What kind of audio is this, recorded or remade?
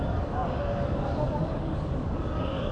remade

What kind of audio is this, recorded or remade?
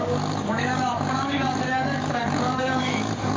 remade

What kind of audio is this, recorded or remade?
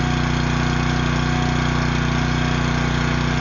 recorded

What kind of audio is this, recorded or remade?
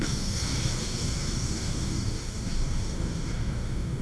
remade